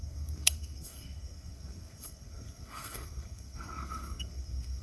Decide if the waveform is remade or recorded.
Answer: remade